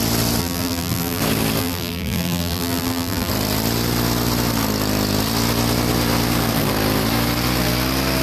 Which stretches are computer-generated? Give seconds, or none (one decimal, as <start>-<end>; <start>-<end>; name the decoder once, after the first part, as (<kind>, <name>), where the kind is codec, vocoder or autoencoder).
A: 0.4-1.2 (vocoder, BigVGAN v2); 1.6-3.3